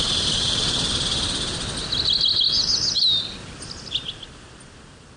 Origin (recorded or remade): recorded